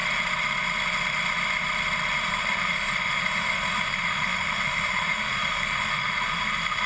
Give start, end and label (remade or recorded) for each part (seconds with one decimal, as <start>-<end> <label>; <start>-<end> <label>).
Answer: 0.0-2.3 recorded; 2.3-6.9 remade